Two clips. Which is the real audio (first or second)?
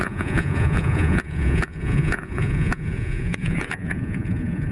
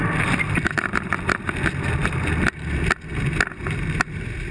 second